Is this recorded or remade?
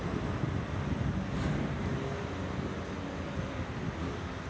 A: recorded